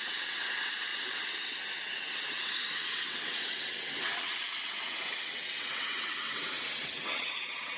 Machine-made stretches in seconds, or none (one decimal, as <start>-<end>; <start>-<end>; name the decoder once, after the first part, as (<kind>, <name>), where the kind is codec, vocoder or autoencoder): 0.0-7.8 (vocoder, WaveNeXt)